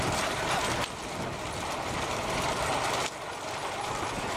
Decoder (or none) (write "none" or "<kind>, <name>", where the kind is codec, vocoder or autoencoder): none